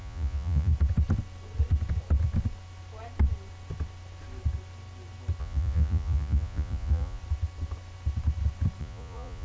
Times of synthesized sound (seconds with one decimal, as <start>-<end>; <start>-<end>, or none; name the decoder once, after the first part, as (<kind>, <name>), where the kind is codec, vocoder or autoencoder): 0.0-0.7 (vocoder, Vocos); 5.4-7.2; 8.8-9.4